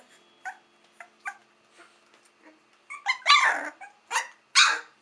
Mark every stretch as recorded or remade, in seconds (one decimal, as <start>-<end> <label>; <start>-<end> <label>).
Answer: 0.0-5.0 recorded